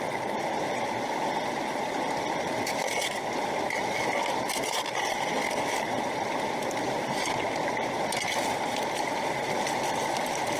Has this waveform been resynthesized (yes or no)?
no